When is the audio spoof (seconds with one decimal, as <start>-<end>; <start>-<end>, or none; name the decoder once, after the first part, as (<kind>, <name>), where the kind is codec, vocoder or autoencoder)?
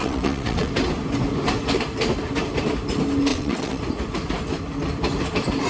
0.0-0.7 (vocoder, WaveNeXt); 3.3-3.8